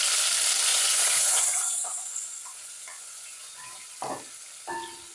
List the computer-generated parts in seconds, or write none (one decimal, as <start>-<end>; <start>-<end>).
0.7-3.8